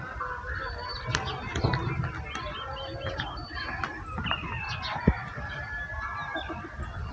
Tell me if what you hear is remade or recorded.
recorded